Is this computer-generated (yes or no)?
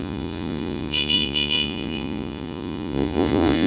yes